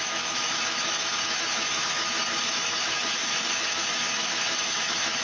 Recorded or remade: remade